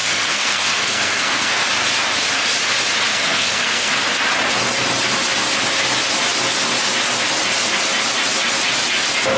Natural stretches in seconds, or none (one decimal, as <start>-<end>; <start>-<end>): 1.6-3.1; 3.9-9.4